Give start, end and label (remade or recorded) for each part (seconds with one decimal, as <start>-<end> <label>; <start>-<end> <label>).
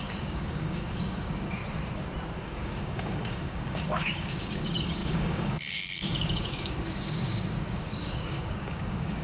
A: 0.0-1.6 remade; 1.6-2.4 recorded; 2.4-9.2 remade